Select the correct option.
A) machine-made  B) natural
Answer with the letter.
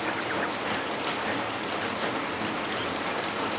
B